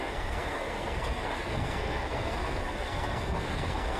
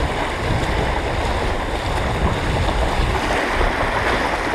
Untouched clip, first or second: second